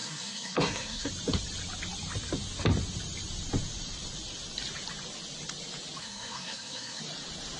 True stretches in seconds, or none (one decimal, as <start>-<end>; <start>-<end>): 1.1-6.0; 7.0-7.6